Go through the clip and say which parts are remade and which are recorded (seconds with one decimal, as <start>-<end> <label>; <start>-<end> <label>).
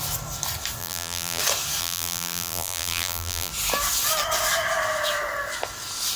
0.0-0.8 recorded; 0.8-1.4 remade; 1.4-1.8 recorded; 1.8-3.5 remade; 3.5-6.2 recorded